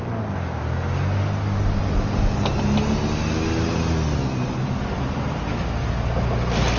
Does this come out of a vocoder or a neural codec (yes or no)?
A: no